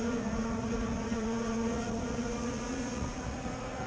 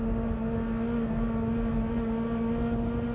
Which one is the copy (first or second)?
first